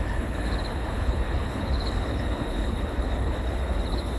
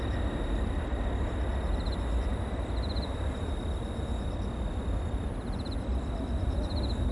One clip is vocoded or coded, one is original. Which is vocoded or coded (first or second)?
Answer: first